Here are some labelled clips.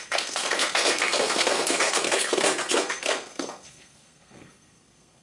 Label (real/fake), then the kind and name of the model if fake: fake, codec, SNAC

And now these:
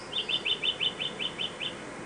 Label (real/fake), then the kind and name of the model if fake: real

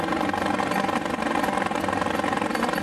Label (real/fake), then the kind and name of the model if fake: real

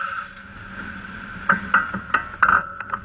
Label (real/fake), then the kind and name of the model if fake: real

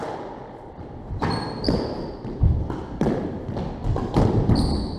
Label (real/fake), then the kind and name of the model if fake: fake, vocoder, BigVGAN v2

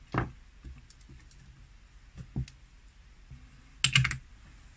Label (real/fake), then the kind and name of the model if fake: real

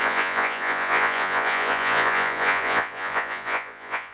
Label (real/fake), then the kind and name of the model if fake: fake, vocoder, Vocos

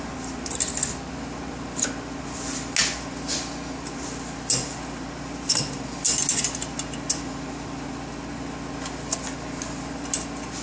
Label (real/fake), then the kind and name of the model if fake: real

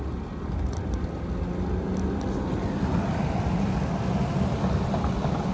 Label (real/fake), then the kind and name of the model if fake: real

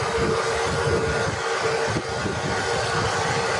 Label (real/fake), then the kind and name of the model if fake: real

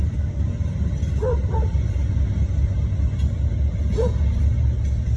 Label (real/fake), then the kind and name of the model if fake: real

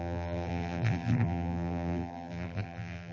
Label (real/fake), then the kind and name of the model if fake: fake, vocoder, BigVGAN v2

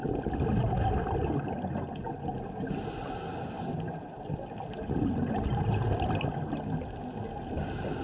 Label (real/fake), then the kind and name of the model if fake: real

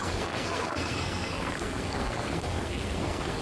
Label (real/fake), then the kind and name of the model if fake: fake, codec, SNAC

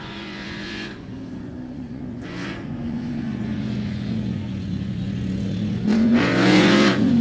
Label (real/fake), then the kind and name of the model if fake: fake, vocoder, Vocos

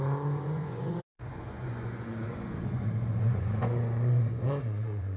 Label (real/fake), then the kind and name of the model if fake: fake, vocoder, Vocos